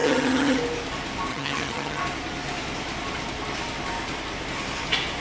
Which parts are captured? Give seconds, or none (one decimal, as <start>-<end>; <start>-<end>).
0.6-1.3; 2.0-5.2